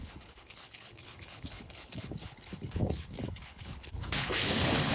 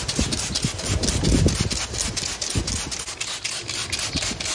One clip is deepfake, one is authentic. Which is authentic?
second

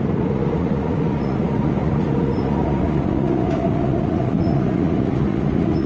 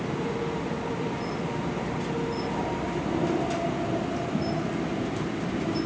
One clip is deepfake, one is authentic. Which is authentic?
second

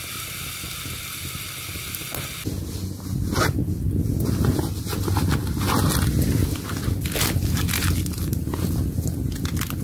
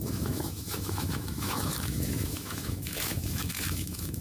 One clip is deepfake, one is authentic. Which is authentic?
first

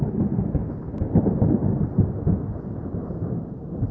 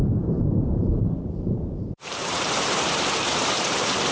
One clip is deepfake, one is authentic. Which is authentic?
first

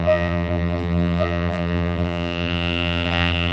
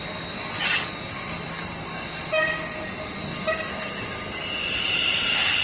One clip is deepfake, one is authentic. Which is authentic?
second